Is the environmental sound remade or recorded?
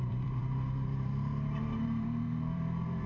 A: remade